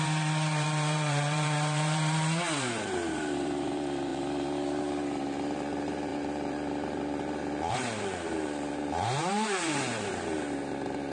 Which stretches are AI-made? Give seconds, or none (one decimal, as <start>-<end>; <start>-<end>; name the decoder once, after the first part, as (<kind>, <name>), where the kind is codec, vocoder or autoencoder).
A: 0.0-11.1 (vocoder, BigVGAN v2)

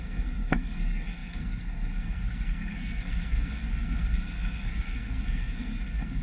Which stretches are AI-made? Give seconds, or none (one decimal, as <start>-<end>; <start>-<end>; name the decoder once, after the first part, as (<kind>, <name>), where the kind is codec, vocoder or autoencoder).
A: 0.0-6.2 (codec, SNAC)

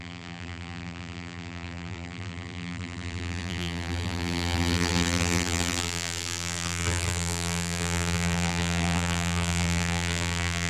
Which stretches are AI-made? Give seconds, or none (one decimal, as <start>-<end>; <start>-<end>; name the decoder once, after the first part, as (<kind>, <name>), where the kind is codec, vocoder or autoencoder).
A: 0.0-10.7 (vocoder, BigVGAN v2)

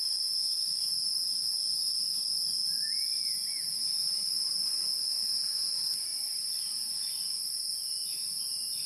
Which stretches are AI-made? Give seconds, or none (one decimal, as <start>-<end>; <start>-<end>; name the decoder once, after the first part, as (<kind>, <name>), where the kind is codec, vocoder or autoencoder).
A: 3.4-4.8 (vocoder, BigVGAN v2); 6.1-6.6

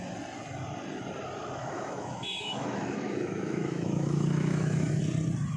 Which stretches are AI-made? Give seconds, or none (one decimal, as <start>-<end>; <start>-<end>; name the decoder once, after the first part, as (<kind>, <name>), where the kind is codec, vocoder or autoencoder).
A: 1.6-5.0 (autoencoder, DAC-VAE)